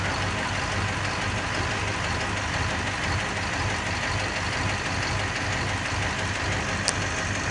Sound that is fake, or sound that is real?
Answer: real